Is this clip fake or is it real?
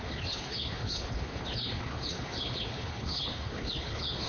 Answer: fake